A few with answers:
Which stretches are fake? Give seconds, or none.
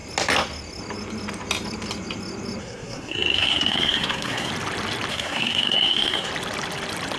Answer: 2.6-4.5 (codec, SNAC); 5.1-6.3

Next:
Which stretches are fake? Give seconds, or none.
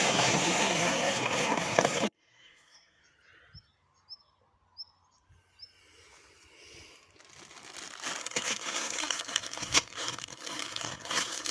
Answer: 0.0-3.0 (codec, SNAC); 8.2-11.5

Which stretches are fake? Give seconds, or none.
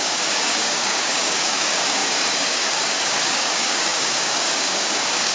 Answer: 0.0-5.3 (codec, DAC)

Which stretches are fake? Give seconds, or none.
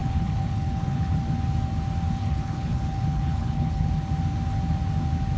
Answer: 0.0-1.2 (codec, HILCodec); 2.2-3.9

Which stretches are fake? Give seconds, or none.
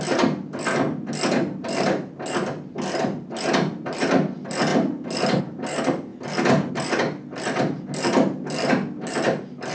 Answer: none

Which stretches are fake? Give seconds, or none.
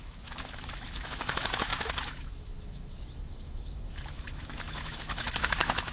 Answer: 0.0-5.9 (autoencoder, DAC-VAE)